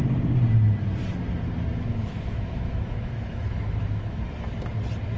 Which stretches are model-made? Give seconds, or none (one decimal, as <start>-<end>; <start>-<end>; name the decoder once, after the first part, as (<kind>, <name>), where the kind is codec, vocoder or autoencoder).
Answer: 1.9-4.2 (autoencoder, DAC-VAE)